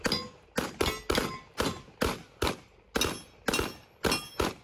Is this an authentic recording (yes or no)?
yes